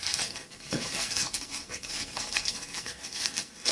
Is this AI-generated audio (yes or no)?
yes